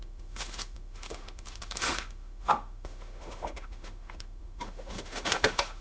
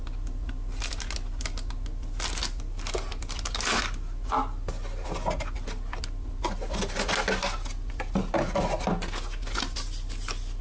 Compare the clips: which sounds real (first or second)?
second